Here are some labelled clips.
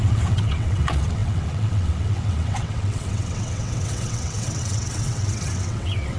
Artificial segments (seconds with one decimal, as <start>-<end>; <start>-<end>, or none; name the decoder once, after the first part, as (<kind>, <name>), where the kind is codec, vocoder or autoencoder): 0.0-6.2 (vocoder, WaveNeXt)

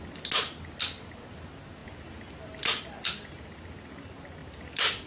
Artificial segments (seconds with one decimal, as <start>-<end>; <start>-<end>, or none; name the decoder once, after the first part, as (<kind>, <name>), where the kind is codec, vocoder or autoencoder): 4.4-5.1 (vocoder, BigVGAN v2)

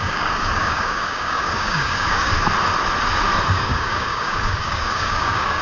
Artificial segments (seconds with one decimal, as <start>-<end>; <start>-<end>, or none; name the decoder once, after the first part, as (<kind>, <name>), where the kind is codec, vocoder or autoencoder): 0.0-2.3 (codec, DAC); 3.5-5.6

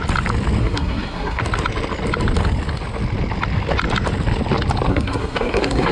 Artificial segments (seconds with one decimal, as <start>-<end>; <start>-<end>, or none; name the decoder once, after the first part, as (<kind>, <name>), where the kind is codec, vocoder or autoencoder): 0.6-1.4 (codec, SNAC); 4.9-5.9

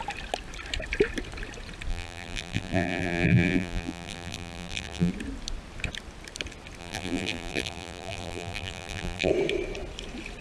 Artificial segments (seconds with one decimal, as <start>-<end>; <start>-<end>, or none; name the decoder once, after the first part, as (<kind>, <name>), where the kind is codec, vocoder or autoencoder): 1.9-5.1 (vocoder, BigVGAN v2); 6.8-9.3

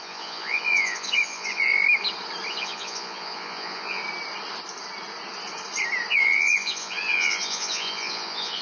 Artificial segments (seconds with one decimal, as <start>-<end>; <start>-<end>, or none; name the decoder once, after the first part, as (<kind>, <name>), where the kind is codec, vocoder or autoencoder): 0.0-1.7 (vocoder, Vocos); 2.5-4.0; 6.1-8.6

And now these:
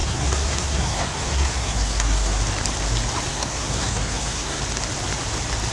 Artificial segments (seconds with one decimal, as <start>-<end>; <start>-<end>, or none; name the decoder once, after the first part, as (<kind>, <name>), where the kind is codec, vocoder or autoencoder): 0.0-2.4 (codec, SNAC); 3.3-4.6

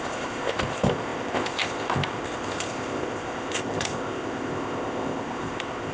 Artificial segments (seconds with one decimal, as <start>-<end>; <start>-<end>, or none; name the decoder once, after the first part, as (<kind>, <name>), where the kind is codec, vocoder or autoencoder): 0.0-5.9 (codec, ZipCodec)